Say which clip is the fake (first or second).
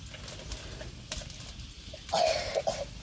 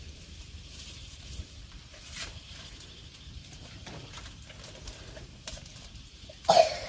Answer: second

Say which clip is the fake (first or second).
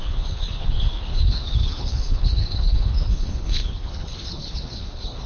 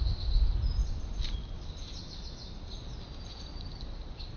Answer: first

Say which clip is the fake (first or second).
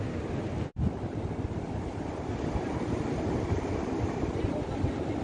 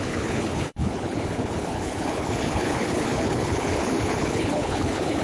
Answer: second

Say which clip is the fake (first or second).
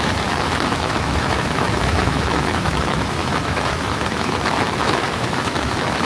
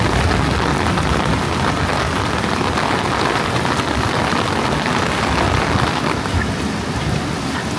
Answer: first